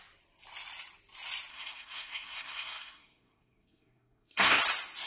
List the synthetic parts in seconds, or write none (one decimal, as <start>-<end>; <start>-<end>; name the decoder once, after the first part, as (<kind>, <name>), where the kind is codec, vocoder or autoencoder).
1.5-4.6 (codec, SNAC)